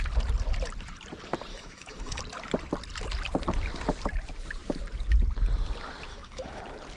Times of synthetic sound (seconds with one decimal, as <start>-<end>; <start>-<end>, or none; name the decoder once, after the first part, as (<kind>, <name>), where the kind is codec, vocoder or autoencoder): 1.5-2.2 (autoencoder, DAC-VAE); 6.1-6.6